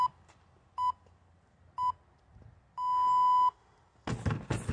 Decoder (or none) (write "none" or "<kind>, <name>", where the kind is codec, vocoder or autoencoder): none